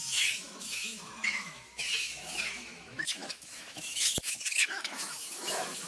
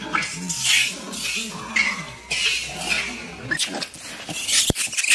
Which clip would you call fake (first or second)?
first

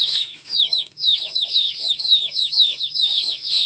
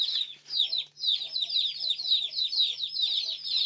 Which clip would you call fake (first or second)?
first